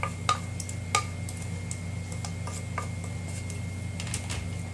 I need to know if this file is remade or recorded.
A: recorded